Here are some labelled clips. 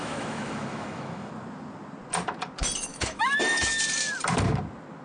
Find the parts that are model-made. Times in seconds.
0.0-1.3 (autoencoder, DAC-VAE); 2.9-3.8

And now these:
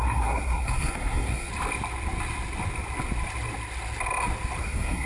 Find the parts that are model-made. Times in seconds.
0.0-1.5 (codec, SNAC); 4.6-5.1

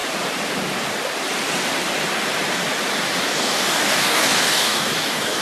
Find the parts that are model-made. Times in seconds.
3.2-5.4 (codec, DAC)